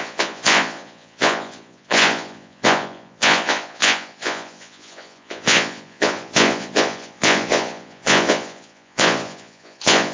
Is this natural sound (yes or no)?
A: no